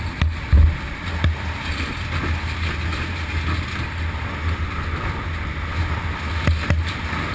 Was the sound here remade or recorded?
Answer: recorded